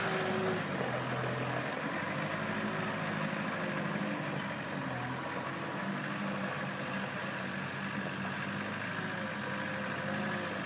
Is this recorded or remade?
recorded